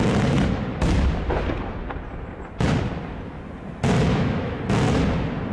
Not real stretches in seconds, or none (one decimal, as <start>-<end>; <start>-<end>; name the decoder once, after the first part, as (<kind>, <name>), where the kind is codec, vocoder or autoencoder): 4.1-4.6 (autoencoder, DAC-VAE)